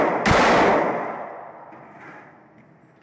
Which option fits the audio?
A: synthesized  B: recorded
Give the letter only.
B